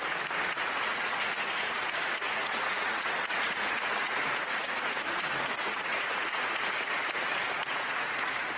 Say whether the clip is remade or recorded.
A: remade